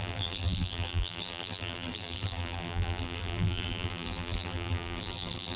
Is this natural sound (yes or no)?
no